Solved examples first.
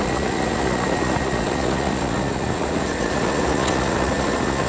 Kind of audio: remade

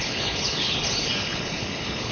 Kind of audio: remade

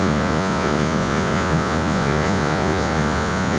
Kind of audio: remade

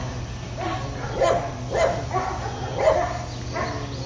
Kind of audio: recorded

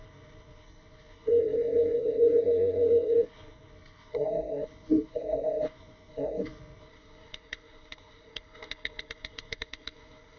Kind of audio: remade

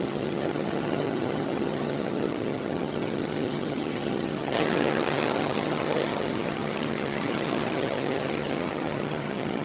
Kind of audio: remade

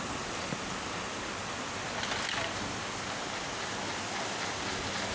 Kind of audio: recorded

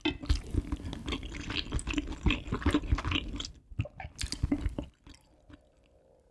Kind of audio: recorded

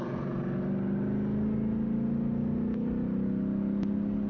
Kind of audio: recorded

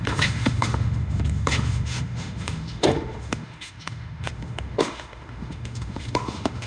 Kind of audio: remade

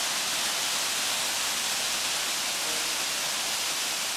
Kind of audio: recorded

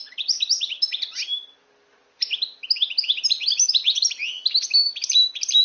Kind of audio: recorded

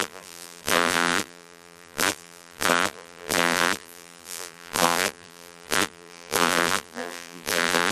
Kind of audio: remade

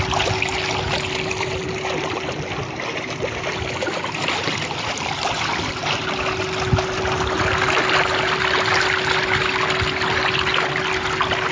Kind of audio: recorded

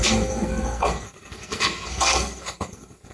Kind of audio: remade